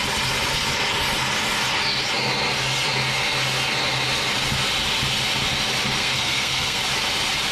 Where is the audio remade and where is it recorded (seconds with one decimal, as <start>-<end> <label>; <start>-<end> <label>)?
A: 0.0-6.0 recorded; 6.0-6.8 remade; 6.8-7.5 recorded